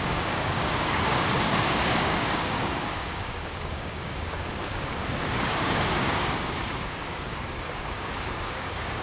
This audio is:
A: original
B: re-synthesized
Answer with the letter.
B